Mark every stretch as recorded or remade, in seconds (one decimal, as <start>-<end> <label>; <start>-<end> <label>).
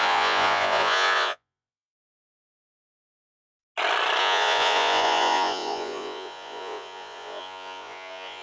0.0-2.8 remade; 2.8-4.2 recorded; 4.2-8.4 remade